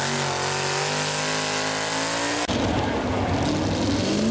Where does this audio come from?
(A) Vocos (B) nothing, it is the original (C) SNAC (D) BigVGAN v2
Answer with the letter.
B